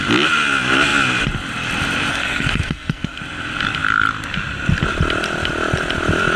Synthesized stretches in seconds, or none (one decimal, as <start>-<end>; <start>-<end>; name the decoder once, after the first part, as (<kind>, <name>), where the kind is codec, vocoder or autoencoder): 2.1-3.2 (codec, SNAC)